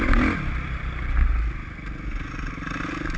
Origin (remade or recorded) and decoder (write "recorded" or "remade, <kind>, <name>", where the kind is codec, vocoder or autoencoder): recorded